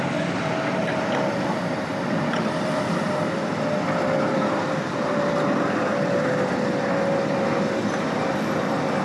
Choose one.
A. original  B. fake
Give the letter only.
B